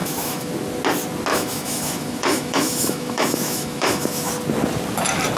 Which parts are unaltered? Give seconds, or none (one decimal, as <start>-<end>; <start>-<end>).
0.5-1.3; 4.3-5.4